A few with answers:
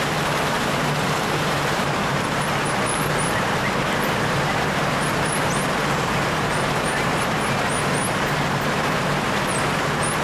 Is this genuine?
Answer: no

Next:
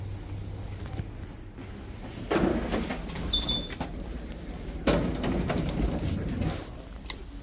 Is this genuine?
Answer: yes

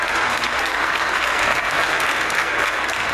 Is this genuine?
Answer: no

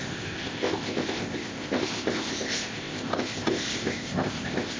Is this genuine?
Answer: no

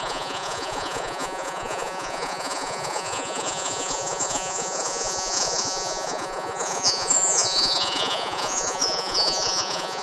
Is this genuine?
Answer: no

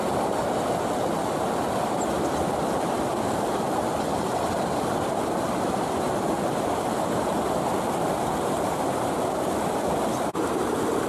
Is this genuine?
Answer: yes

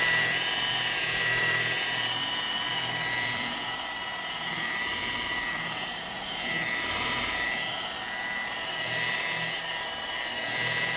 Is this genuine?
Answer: no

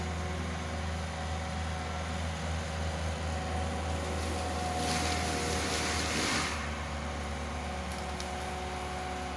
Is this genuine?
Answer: yes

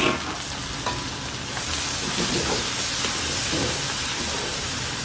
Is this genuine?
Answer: yes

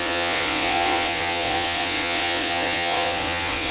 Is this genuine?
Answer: no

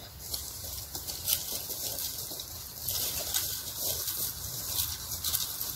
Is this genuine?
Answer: yes